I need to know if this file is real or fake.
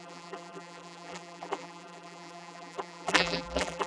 fake